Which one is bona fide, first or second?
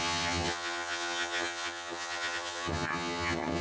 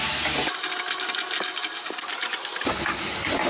second